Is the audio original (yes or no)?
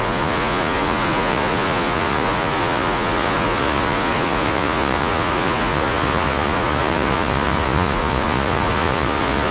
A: no